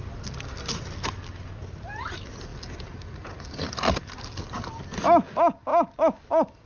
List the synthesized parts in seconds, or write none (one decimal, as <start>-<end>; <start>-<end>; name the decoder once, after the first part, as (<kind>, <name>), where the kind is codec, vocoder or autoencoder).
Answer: none